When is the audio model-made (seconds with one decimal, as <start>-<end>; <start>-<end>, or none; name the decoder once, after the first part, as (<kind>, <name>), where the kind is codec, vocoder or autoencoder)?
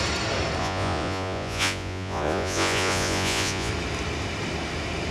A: 0.6-3.7 (vocoder, Vocos)